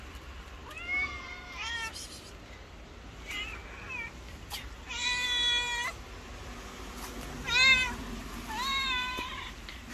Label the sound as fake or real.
real